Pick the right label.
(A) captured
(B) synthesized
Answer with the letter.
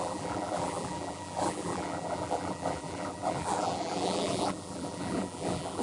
B